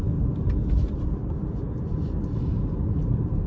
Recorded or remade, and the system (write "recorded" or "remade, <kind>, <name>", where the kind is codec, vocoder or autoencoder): recorded